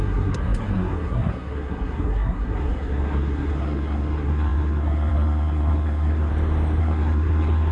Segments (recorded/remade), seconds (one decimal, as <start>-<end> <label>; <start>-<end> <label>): 0.0-6.3 remade; 6.3-6.8 recorded; 6.8-7.7 remade